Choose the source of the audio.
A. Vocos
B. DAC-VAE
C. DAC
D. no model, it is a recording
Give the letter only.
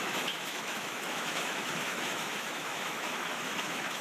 B